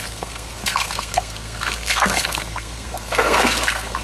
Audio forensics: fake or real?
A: fake